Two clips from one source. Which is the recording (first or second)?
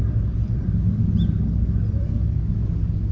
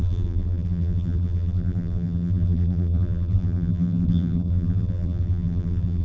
first